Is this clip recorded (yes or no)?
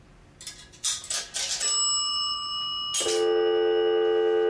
yes